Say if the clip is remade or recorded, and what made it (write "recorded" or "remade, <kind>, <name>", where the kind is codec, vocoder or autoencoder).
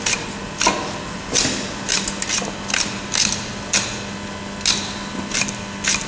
recorded